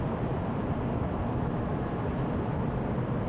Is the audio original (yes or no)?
no